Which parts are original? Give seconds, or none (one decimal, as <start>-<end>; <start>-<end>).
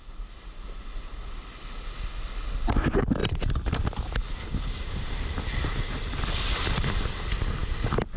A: 0.0-8.2